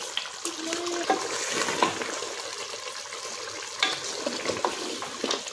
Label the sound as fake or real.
real